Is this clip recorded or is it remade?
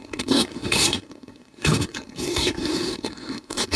remade